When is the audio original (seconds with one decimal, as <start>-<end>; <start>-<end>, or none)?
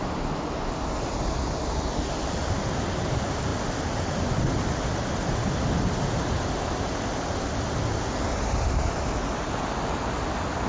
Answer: 0.0-10.7